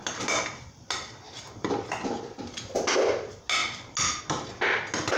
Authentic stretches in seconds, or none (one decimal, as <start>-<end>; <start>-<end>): 0.0-5.2